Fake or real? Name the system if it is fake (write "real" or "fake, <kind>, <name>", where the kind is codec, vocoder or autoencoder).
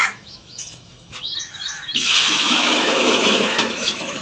fake, autoencoder, DAC-VAE